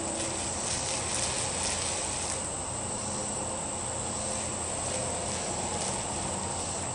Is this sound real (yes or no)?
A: yes